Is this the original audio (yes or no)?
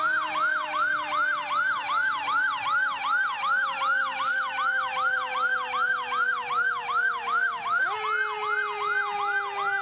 yes